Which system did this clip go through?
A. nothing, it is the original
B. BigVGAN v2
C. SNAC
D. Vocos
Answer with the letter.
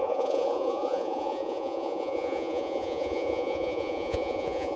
D